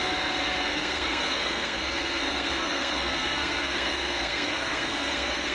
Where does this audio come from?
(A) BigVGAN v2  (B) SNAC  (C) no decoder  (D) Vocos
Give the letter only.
B